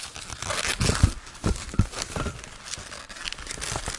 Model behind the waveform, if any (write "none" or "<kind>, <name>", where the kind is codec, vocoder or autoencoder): none